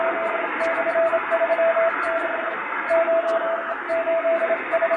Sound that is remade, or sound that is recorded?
recorded